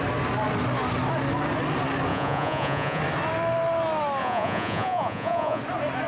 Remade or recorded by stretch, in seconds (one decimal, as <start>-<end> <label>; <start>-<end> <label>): 0.0-2.1 recorded; 2.1-3.0 remade; 3.0-4.2 recorded; 4.2-5.6 remade; 5.6-6.1 recorded